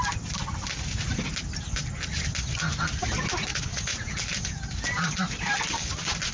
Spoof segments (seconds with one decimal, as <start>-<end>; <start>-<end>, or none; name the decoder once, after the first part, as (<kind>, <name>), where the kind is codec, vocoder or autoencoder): 3.5-4.1 (vocoder, Vocos)

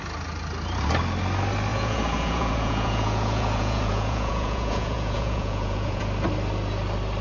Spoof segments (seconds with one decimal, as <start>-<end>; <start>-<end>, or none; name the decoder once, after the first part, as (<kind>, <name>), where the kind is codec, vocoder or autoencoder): 1.7-6.0 (vocoder, Vocos)

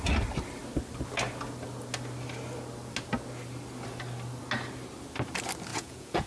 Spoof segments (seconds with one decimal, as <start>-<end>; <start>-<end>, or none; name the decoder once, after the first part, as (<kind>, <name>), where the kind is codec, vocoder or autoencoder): 5.7-6.3 (vocoder, Vocos)